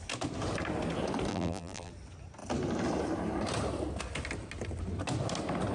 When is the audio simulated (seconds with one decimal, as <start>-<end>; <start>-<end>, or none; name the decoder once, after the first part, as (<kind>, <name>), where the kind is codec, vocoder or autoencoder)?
1.3-1.9 (vocoder, BigVGAN v2)